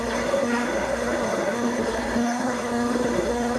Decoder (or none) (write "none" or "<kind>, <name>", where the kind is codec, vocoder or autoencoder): codec, SNAC